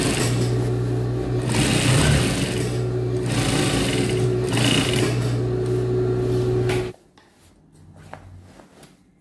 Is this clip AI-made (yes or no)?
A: no